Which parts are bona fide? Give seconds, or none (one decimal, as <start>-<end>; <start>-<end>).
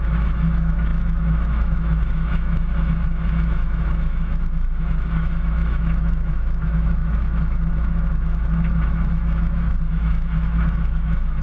none